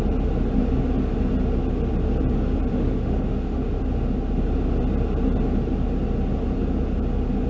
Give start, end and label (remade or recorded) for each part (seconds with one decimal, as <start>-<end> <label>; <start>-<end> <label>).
0.0-2.7 recorded; 2.7-3.8 remade; 3.8-7.5 recorded